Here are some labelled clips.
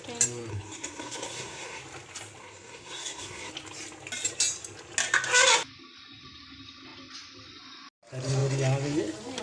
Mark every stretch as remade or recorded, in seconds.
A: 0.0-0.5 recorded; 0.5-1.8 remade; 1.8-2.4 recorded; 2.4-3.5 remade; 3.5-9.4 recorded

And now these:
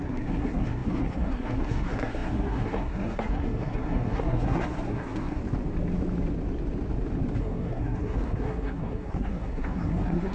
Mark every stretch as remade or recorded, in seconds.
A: 0.0-5.4 remade; 5.4-7.4 recorded; 7.4-10.3 remade

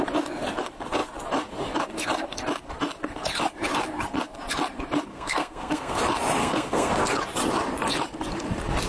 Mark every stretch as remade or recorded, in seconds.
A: 0.0-5.1 recorded; 5.1-6.0 remade; 6.0-6.4 recorded; 6.4-6.9 remade; 6.9-8.9 recorded

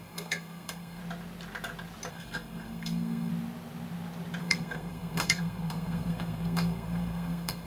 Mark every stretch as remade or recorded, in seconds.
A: 0.0-1.0 remade; 1.0-2.1 recorded; 2.1-3.3 remade; 3.3-4.4 recorded; 4.4-7.7 remade

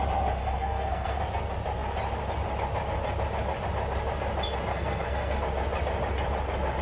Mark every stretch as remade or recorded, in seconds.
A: 0.0-0.4 recorded; 0.4-1.2 remade; 1.2-4.7 recorded; 4.7-5.4 remade; 5.4-6.8 recorded

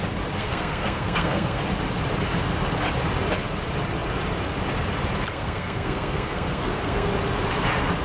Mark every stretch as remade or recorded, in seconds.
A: 0.0-0.4 recorded; 0.4-1.6 remade; 1.6-5.3 recorded; 5.3-7.1 remade; 7.1-8.0 recorded